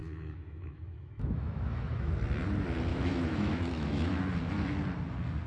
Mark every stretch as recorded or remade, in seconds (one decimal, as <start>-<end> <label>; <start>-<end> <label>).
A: 0.0-2.1 remade; 2.1-2.9 recorded; 2.9-4.2 remade; 4.2-5.5 recorded